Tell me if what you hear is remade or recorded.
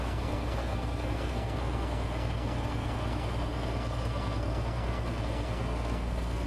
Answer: remade